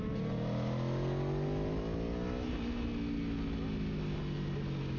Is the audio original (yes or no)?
yes